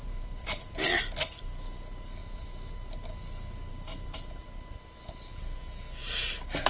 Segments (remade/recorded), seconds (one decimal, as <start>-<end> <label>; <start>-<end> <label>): 0.0-1.0 remade; 1.0-6.0 recorded; 6.0-6.7 remade